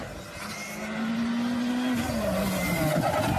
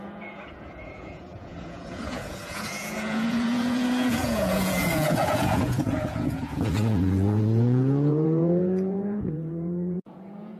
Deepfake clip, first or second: second